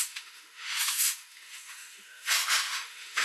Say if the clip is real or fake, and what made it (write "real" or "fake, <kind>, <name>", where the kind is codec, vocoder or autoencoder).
fake, autoencoder, DAC-VAE